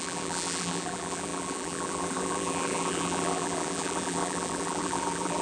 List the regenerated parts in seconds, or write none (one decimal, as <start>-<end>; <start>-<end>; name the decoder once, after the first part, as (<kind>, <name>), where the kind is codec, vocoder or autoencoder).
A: 0.0-5.4 (vocoder, BigVGAN v2)